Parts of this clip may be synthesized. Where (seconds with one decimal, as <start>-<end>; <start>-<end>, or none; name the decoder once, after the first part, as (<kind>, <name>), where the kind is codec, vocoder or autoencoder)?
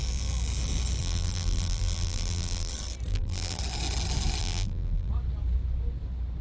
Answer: 1.0-2.7 (vocoder, BigVGAN v2); 3.1-3.6; 4.4-5.1